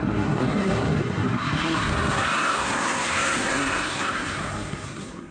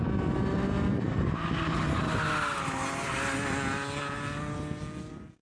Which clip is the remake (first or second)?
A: first